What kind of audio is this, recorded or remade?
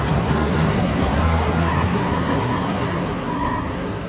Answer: remade